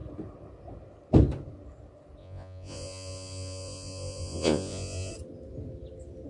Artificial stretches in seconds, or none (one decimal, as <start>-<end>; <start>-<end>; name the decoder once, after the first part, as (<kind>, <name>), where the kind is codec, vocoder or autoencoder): 2.2-5.1 (vocoder, Vocos)

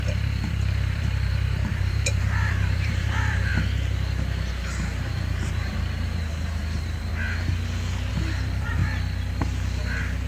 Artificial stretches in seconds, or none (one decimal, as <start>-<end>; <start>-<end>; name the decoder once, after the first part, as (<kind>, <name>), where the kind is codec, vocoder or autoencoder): 0.0-3.5 (vocoder, BigVGAN v2); 4.5-7.1; 8.1-8.8

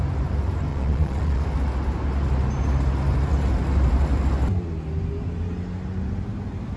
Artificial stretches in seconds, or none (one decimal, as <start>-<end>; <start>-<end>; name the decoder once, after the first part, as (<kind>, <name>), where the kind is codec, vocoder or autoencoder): 0.7-1.4 (vocoder, Vocos)

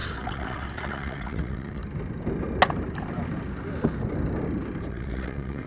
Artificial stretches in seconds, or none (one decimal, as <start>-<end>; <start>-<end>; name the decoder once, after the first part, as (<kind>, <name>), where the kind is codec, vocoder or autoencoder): 0.0-1.8 (vocoder, WaveNeXt); 4.9-5.7

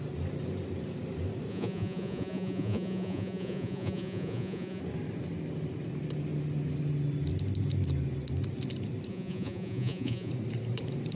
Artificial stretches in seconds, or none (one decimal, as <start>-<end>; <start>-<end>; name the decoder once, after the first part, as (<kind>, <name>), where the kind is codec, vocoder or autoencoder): 1.5-4.8 (vocoder, Vocos); 9.1-10.3